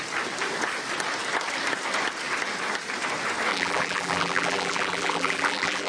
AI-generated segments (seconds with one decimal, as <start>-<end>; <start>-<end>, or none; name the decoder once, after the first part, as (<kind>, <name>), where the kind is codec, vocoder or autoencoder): 3.5-5.9 (vocoder, BigVGAN v2)